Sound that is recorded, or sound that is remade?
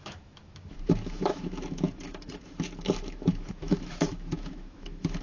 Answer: remade